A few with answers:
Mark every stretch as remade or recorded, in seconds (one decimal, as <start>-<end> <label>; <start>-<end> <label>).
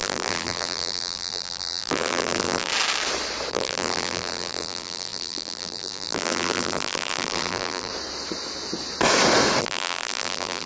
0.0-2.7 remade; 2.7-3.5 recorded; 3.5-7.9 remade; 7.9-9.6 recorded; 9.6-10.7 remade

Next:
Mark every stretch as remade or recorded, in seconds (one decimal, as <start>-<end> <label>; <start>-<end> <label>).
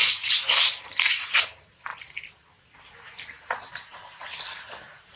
0.0-5.2 recorded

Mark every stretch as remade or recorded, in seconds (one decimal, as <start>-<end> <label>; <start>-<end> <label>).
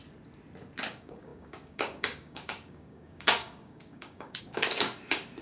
0.0-0.9 recorded; 0.9-5.4 remade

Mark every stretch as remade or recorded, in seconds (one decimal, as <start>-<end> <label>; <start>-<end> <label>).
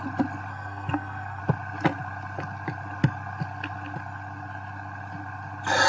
0.0-0.5 recorded; 0.5-1.4 remade; 1.4-5.9 recorded